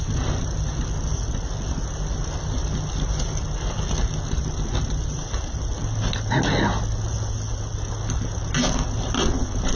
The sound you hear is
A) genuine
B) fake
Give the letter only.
A